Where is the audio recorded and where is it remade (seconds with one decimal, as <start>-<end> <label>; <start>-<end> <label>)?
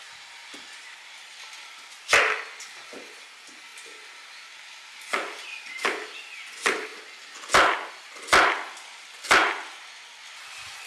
0.0-10.9 recorded